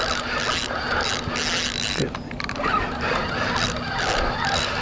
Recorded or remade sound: recorded